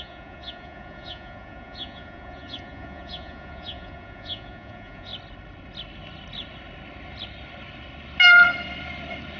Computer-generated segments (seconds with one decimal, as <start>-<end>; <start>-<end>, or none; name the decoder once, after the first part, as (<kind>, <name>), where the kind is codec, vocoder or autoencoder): 0.0-5.1 (vocoder, Vocos)